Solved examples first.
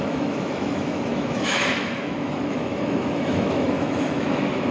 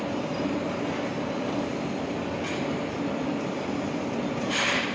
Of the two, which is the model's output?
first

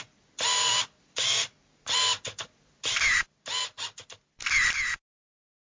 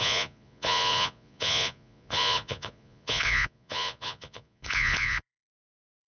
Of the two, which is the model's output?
second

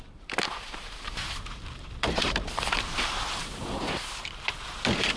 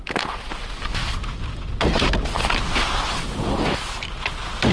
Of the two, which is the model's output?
first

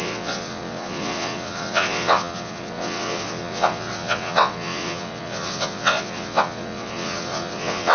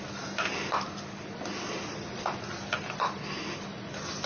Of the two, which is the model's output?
first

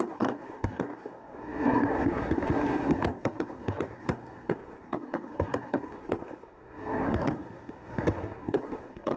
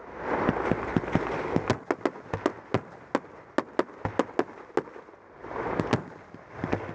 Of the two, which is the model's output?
first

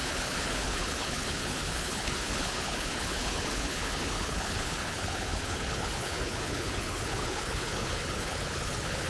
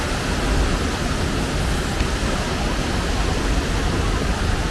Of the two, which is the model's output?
first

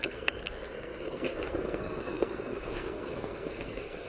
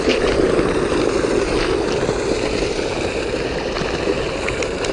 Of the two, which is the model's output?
first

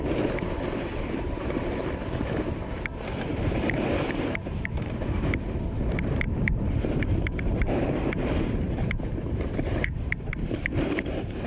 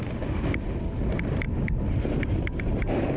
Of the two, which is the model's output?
first